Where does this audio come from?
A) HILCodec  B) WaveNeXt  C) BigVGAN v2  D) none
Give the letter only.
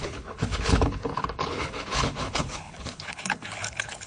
A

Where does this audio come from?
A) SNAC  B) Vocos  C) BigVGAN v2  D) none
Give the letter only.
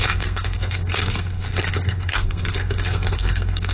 A